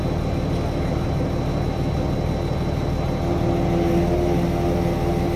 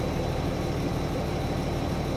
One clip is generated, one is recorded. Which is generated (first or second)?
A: second